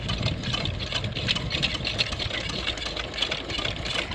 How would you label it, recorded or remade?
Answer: recorded